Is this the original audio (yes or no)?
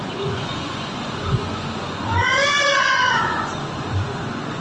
no